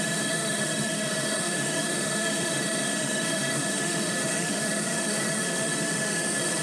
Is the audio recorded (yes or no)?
no